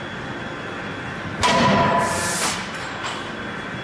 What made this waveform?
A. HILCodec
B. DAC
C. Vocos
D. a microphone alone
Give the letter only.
D